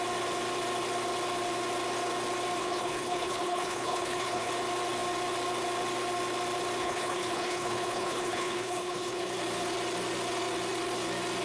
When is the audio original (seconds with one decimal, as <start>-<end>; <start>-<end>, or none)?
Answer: 0.0-2.6; 4.5-6.8; 9.3-11.4